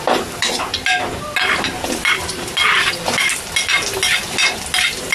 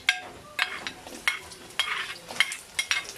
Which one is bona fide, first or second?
second